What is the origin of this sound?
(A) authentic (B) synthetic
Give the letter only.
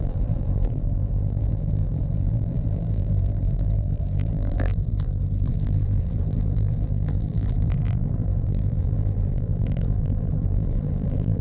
B